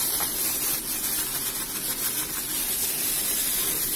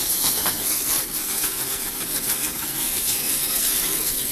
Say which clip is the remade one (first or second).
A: second